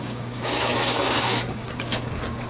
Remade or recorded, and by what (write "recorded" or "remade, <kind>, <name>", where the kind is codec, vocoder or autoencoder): remade, codec, DAC